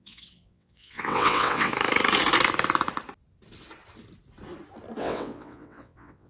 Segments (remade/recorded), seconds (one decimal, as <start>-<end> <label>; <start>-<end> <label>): 0.0-1.7 remade; 1.7-5.0 recorded; 5.0-6.3 remade